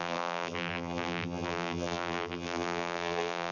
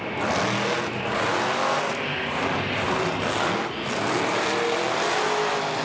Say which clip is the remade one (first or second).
first